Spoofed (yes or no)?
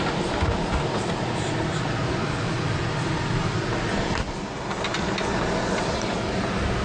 no